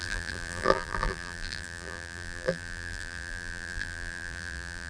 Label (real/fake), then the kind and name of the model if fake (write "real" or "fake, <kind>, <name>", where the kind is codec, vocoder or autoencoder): fake, vocoder, BigVGAN v2